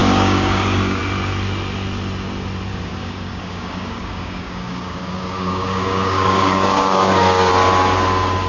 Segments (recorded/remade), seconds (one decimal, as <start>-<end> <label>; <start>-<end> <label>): 0.0-1.0 remade; 1.0-2.7 recorded; 2.7-7.5 remade; 7.5-8.5 recorded